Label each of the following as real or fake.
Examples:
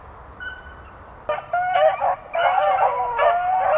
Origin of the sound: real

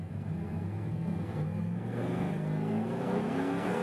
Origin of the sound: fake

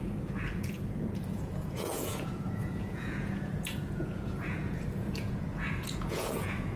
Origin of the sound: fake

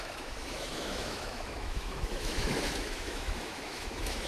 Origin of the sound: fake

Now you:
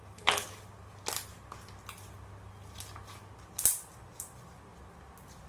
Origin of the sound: real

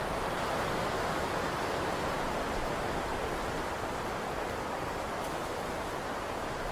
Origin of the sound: real